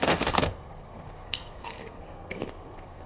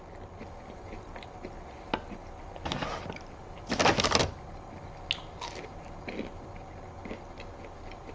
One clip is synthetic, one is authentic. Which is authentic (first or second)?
second